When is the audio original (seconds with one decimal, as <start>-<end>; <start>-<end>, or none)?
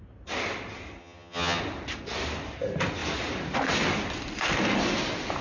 0.0-1.0; 1.6-5.4